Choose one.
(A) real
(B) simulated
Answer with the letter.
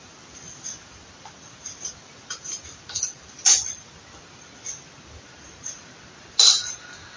A